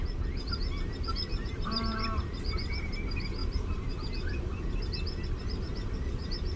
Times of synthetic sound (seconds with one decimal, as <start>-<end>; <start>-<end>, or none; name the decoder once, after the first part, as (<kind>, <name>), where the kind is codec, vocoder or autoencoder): 1.3-2.9 (vocoder, BigVGAN v2); 3.4-4.8